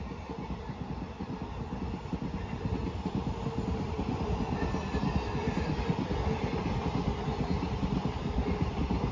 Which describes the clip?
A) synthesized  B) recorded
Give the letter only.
B